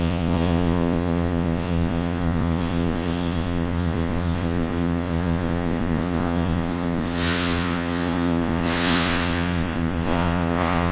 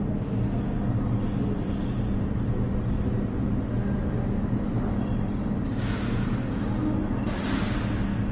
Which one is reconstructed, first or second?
first